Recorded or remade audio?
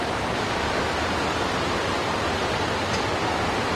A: recorded